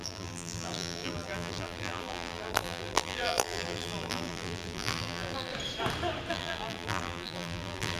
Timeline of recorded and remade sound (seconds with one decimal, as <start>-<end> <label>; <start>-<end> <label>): 0.0-5.5 remade; 5.5-6.3 recorded; 6.3-8.0 remade